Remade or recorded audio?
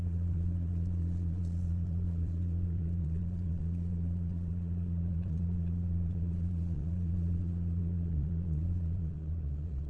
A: remade